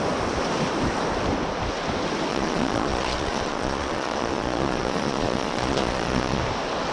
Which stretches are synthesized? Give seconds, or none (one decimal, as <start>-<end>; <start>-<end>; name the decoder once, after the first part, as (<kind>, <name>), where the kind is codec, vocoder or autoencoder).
2.3-6.4 (vocoder, Vocos)

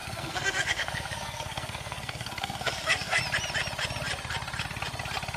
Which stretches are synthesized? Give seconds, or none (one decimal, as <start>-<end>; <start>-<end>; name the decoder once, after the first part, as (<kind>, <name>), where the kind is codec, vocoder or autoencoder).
0.0-3.2 (codec, SNAC)

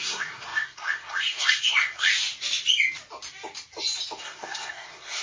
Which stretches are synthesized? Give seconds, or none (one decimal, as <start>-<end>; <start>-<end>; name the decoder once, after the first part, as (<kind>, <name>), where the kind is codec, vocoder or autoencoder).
0.0-2.1 (codec, SNAC); 4.2-5.2

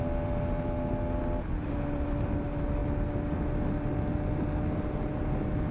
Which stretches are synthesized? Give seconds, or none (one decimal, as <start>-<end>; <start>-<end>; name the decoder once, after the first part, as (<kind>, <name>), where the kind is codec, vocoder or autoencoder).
none

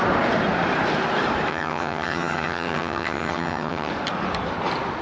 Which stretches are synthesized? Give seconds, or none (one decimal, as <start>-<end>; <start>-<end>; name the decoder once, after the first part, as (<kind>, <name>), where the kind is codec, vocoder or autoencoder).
1.5-3.9 (vocoder, HiFi-GAN)

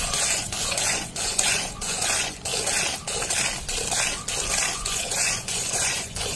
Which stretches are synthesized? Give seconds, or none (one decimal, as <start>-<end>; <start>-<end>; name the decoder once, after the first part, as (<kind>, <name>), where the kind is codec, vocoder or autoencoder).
0.0-2.5 (vocoder, Vocos); 4.7-6.4